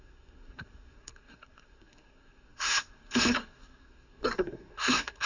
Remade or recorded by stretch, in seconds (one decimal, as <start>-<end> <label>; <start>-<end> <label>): 0.0-5.3 remade